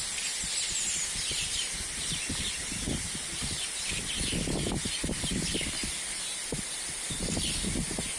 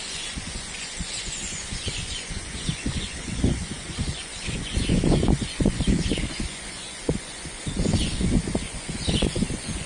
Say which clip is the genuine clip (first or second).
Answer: first